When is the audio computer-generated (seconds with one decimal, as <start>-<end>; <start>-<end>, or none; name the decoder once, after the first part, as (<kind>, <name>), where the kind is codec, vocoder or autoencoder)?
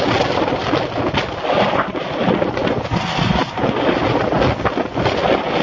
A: none